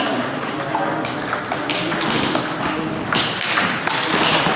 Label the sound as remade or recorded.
recorded